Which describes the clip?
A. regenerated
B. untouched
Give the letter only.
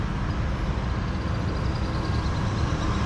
B